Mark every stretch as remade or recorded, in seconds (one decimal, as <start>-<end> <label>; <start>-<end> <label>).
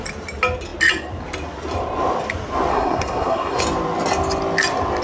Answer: 0.0-2.7 recorded; 2.7-3.6 remade; 3.6-5.0 recorded